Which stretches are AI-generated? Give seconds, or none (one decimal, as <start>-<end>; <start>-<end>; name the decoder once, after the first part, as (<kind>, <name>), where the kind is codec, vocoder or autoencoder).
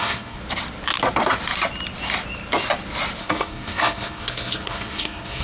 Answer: 0.0-0.4 (codec, SNAC); 3.2-5.4